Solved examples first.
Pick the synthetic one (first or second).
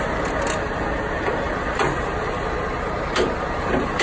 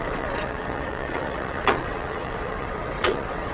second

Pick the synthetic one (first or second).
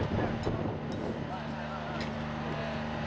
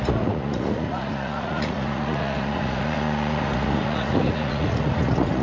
second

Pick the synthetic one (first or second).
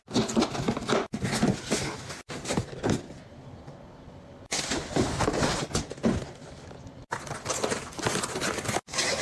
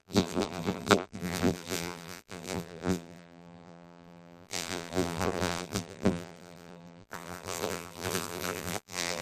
second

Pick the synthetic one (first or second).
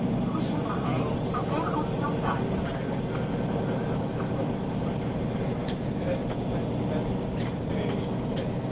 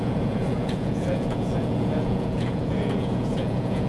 second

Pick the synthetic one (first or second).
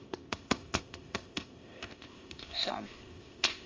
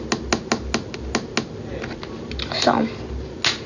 first